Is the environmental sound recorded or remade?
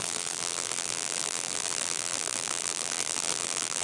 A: remade